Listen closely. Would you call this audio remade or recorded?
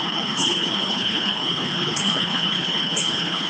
remade